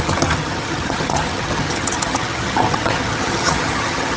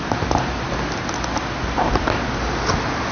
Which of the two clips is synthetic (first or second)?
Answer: first